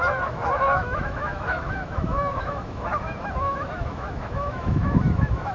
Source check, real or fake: fake